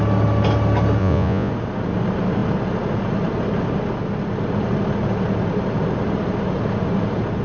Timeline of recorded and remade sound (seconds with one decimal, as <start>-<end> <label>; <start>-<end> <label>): 0.0-1.0 recorded; 1.0-1.5 remade; 1.5-7.4 recorded